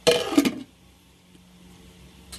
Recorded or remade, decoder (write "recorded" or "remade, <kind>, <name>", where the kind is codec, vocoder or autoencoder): recorded